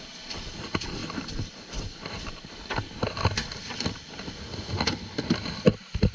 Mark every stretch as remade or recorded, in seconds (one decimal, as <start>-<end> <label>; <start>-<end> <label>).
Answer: 0.0-1.0 recorded; 1.0-4.7 remade; 4.7-6.1 recorded